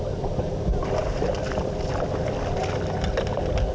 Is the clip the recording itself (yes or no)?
yes